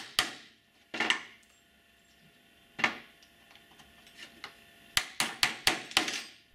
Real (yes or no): yes